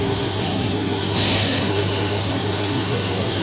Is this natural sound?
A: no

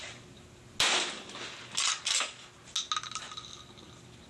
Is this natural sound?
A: yes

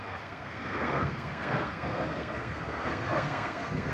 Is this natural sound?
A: no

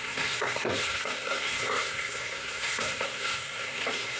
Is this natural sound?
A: no